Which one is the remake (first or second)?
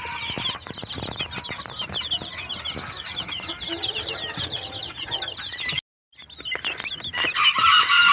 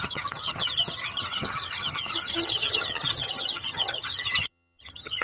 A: second